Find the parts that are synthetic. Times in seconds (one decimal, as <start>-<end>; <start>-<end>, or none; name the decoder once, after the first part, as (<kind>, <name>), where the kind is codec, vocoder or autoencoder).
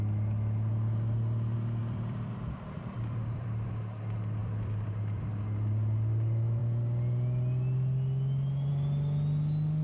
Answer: 1.8-3.7 (vocoder, BigVGAN v2); 4.4-5.4